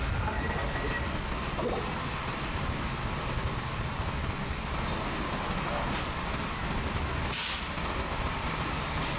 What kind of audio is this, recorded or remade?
recorded